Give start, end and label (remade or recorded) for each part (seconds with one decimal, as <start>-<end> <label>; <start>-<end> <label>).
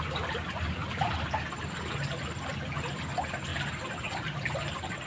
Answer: 0.0-0.8 recorded; 0.8-1.8 remade; 1.8-5.1 recorded